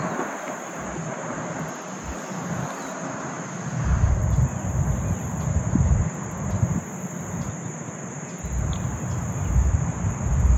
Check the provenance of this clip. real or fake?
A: real